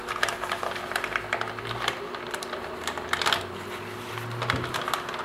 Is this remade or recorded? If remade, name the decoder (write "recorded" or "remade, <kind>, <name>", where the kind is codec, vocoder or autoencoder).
remade, vocoder, BigVGAN v2